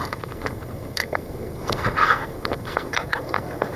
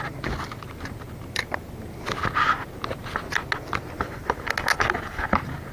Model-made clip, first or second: first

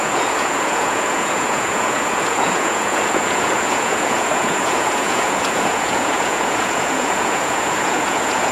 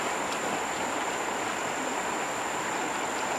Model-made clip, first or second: first